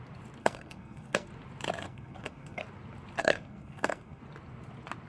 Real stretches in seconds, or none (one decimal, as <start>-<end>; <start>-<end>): 0.0-0.4; 1.3-1.8; 2.6-3.2; 4.2-5.1